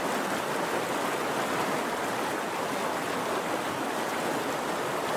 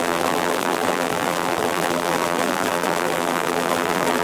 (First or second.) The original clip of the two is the first